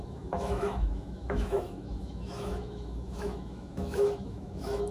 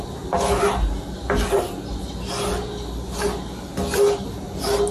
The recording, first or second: second